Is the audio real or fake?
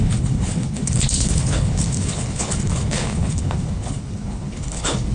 fake